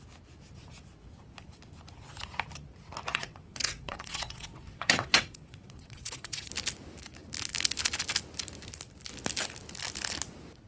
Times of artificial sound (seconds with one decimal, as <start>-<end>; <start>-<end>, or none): 3.1-6.5